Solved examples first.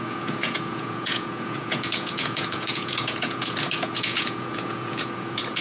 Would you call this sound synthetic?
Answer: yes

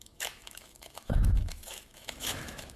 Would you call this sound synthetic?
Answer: yes